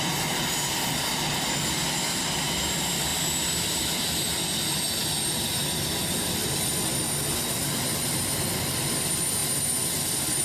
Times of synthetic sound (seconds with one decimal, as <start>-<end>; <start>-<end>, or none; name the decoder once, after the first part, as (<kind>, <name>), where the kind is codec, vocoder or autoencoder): none